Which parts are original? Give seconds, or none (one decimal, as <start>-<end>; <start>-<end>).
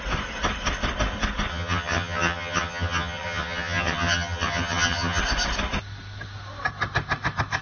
0.0-1.5; 5.2-7.6